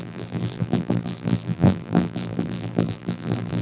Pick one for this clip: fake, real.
fake